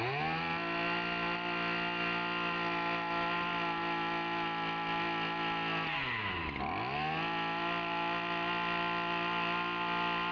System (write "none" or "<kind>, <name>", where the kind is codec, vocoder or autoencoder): none